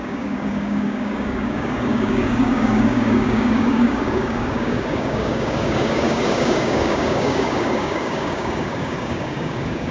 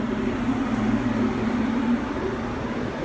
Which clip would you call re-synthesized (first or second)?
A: first